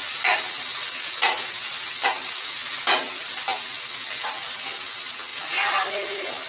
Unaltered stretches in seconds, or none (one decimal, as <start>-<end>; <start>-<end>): 0.0-6.5